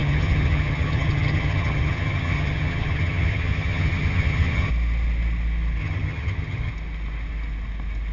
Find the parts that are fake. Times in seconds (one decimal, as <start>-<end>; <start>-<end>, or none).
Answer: 0.0-4.7; 5.8-6.7